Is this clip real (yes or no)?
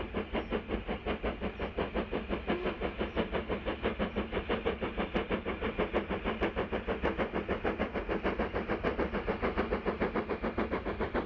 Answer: yes